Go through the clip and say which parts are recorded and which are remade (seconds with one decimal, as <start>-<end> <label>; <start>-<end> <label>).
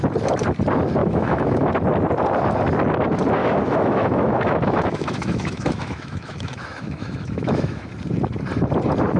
0.0-1.0 recorded; 1.0-1.7 remade; 1.7-3.4 recorded; 3.4-7.9 remade; 7.9-9.2 recorded